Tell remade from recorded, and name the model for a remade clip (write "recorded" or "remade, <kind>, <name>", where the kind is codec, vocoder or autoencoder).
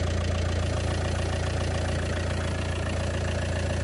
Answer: recorded